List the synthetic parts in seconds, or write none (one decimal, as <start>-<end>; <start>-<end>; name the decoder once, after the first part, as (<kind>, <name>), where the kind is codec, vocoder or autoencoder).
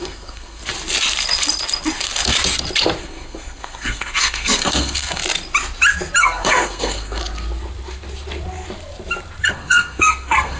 0.0-0.6 (codec, SNAC); 3.0-5.2; 6.2-7.2; 9.5-10.6